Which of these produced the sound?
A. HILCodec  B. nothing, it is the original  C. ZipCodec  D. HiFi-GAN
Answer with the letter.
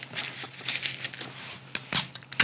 B